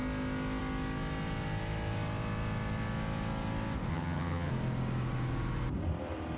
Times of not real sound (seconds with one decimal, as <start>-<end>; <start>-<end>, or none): 3.9-4.5

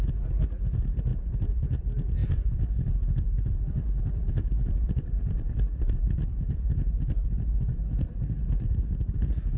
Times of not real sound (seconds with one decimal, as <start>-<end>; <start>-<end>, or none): 1.1-1.8; 2.2-2.7; 4.6-6.7

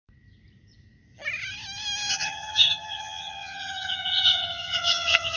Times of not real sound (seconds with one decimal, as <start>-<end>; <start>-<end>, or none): 2.1-5.4

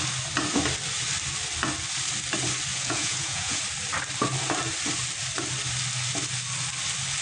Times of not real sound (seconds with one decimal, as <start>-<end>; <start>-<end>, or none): 2.7-3.6

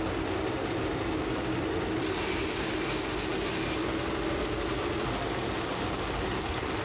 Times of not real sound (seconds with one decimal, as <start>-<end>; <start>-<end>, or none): none

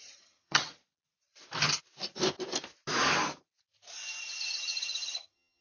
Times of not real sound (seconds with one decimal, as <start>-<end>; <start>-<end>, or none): 0.0-0.8; 4.2-5.6

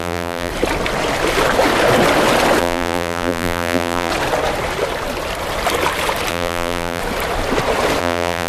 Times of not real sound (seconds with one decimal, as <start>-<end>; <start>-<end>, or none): 0.0-0.5; 2.6-4.1; 6.3-7.0; 8.0-8.5